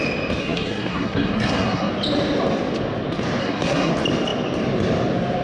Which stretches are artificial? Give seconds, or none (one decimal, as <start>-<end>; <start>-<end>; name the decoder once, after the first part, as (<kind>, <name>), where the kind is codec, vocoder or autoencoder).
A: 0.4-1.9 (codec, SNAC); 3.4-3.9